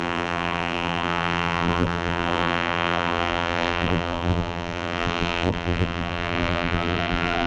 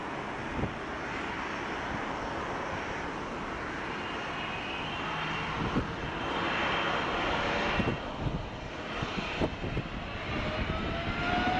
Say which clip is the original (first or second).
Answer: second